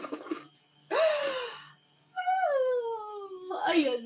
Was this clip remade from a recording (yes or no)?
yes